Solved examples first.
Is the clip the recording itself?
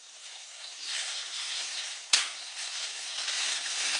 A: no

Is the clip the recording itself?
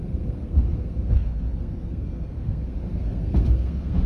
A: no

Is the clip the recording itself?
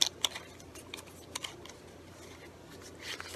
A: yes